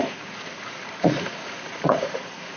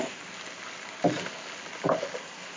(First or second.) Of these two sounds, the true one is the second